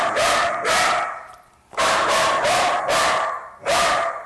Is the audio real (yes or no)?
no